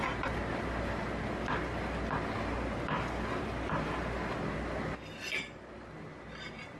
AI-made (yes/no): no